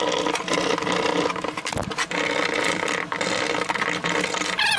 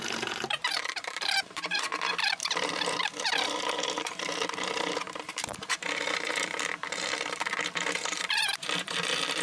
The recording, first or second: first